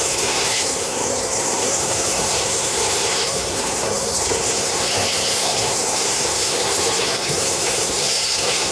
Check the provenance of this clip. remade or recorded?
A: remade